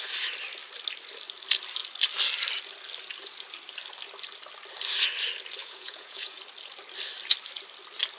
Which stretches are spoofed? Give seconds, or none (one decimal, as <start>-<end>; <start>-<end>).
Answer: 5.6-6.4